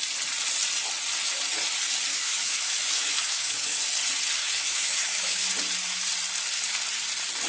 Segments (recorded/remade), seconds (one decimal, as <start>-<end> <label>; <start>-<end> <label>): 0.0-2.1 recorded; 2.1-3.8 remade; 3.8-4.4 recorded; 4.4-5.5 remade; 5.5-7.5 recorded